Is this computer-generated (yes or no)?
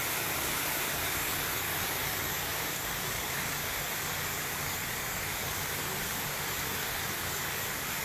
yes